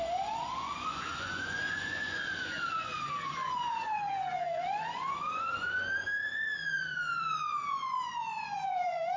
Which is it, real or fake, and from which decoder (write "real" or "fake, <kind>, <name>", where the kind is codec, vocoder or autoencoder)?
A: fake, vocoder, Vocos